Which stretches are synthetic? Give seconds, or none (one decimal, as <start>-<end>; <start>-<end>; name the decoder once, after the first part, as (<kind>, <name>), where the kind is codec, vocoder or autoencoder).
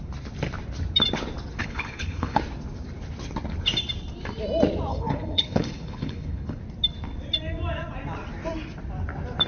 1.6-2.4 (codec, HILCodec); 4.9-6.6